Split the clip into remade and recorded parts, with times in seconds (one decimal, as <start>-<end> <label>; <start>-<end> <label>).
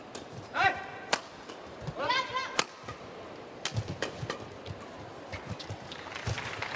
0.0-2.4 remade; 2.4-4.1 recorded; 4.1-6.8 remade